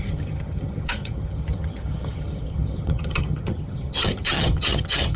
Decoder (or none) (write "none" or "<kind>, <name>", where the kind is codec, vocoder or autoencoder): vocoder, HiFi-GAN